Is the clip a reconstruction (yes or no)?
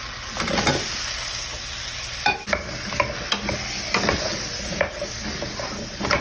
no